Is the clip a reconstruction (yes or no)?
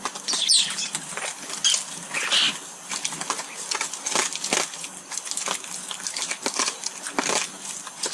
no